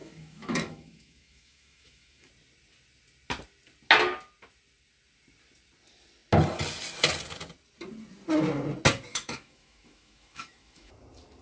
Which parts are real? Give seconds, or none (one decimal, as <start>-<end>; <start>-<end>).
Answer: 2.3-9.1; 10.9-11.4

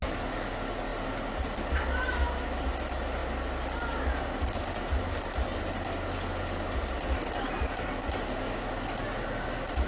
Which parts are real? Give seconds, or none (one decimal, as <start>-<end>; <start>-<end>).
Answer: 0.0-9.9

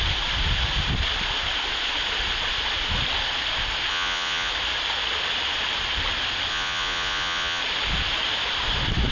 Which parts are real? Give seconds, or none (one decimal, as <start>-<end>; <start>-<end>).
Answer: 0.0-3.9; 4.5-6.5; 7.6-9.1

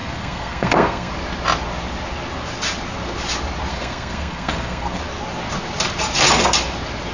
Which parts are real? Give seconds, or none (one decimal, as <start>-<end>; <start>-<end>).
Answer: 1.1-3.7; 5.0-7.1

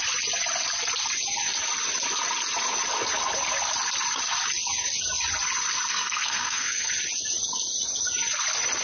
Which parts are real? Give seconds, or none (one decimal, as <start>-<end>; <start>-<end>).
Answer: 0.0-5.9; 6.9-8.8